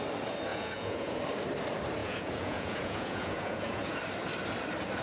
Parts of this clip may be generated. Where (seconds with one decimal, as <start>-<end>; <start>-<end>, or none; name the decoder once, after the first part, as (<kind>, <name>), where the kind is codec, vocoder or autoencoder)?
0.5-1.2 (vocoder, Vocos); 2.0-4.0